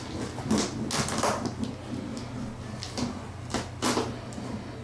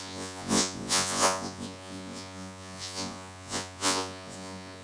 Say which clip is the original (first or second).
first